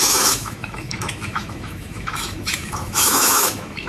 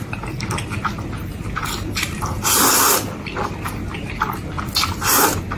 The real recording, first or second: second